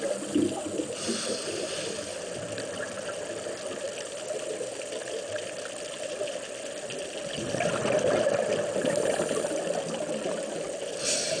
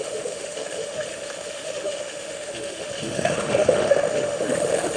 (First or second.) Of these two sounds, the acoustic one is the first